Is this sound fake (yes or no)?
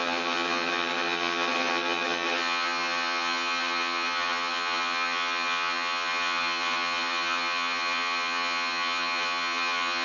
yes